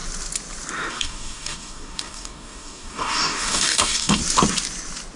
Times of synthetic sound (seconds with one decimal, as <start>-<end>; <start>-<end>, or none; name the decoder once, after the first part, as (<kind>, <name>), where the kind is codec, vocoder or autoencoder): 0.9-4.2 (codec, DAC)